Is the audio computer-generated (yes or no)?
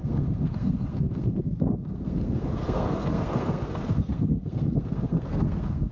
yes